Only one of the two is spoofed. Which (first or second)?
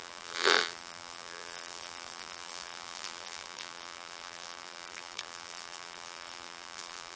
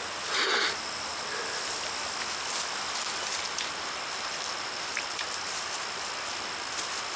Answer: first